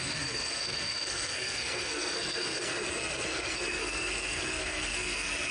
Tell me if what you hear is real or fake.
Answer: fake